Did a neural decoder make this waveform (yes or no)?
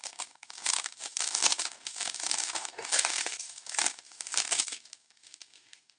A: yes